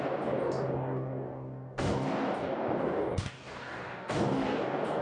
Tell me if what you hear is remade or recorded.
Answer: remade